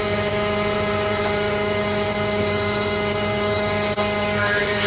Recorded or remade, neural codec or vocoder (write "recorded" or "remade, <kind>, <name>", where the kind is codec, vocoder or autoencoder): remade, autoencoder, DAC-VAE